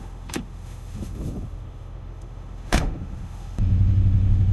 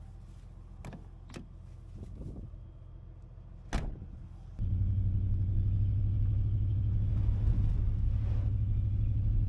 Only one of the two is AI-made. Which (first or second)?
first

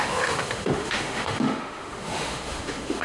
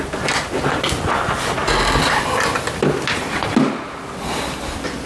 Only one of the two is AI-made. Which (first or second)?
first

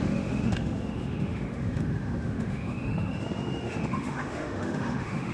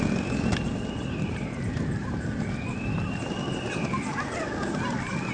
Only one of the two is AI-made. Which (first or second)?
first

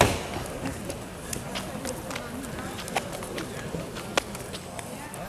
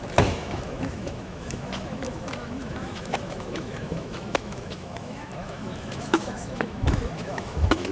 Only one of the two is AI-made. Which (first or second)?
second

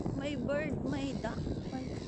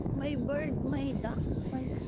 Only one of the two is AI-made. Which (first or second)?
second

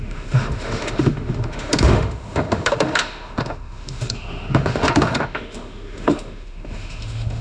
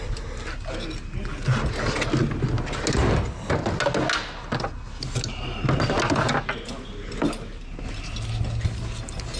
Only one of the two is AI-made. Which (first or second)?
first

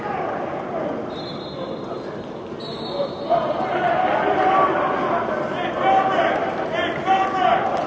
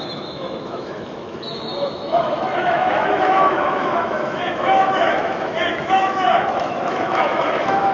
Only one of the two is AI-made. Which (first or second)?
second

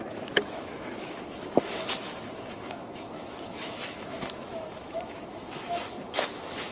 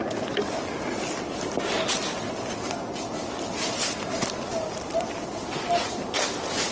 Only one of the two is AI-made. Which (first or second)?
first